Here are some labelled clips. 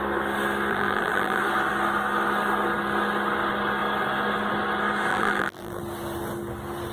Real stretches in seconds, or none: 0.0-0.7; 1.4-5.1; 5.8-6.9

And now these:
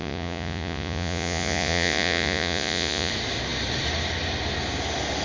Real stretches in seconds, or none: 3.1-5.2

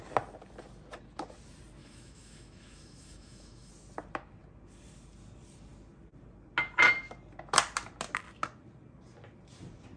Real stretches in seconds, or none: 0.0-1.8; 3.7-10.0